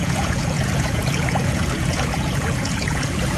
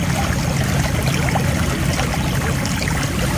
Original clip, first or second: second